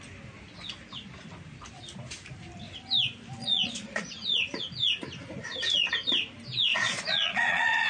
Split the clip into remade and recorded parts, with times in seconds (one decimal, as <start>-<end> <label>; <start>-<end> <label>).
0.0-3.4 recorded; 3.4-4.1 remade; 4.1-6.7 recorded; 6.7-7.9 remade